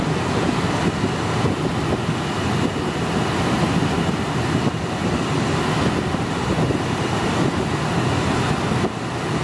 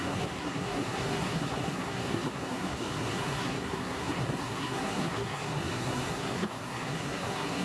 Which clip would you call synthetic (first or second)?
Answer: second